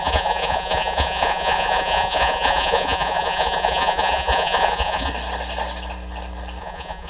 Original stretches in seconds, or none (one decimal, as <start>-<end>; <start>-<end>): 5.1-6.6